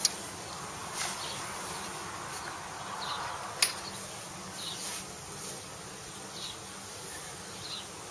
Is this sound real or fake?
real